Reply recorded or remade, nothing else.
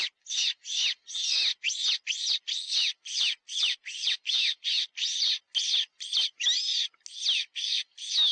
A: recorded